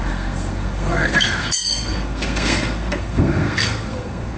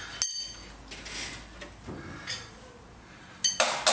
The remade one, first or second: first